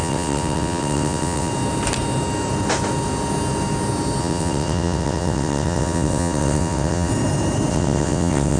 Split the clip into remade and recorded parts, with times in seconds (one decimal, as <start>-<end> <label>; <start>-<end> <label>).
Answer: 0.0-1.5 remade; 1.5-4.2 recorded; 4.2-7.1 remade; 7.1-7.7 recorded; 7.7-8.6 remade